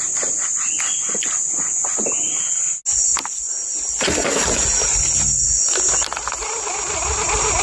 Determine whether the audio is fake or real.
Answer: real